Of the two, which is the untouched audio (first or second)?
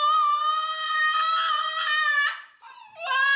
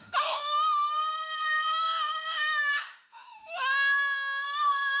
first